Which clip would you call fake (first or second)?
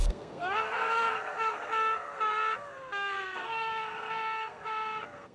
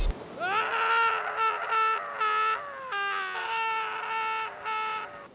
first